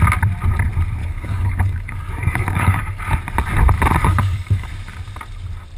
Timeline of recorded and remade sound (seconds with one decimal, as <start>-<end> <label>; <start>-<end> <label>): 0.0-1.0 recorded; 1.0-3.0 remade; 3.0-4.0 recorded; 4.0-4.7 remade; 4.7-5.8 recorded